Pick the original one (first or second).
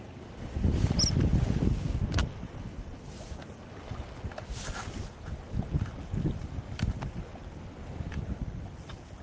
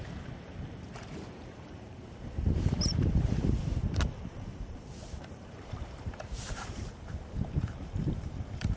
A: first